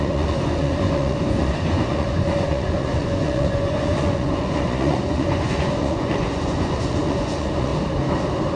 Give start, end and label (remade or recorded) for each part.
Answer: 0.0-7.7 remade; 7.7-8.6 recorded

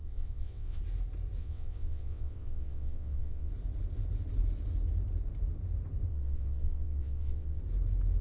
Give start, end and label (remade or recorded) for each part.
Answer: 0.0-0.8 remade; 0.8-1.4 recorded; 1.4-3.5 remade; 3.5-6.1 recorded; 6.1-7.6 remade; 7.6-8.2 recorded

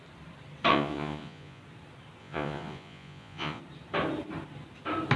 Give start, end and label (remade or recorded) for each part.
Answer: 0.0-0.7 recorded; 0.7-1.6 remade; 1.6-2.2 recorded; 2.2-3.6 remade; 3.6-5.2 recorded

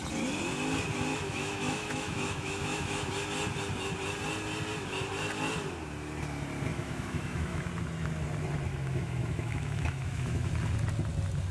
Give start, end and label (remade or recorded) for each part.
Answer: 0.0-1.1 recorded; 1.1-3.1 remade; 3.1-6.7 recorded; 6.7-7.7 remade; 7.7-8.7 recorded; 8.7-10.5 remade; 10.5-11.5 recorded

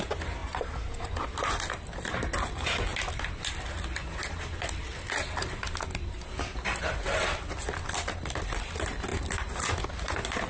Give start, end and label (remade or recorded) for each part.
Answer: 0.0-10.5 recorded

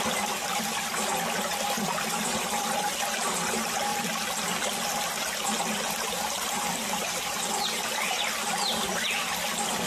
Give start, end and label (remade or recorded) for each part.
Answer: 0.0-9.9 recorded

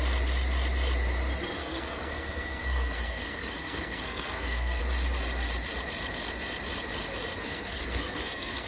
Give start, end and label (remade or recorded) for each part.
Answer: 0.0-1.6 recorded; 1.6-4.8 remade; 4.8-7.3 recorded; 7.3-8.7 remade

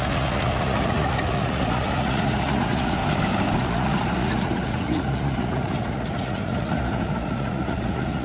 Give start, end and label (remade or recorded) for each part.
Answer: 0.0-3.0 remade; 3.0-3.6 recorded; 3.6-8.2 remade